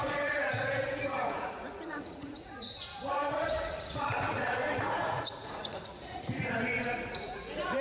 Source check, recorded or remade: remade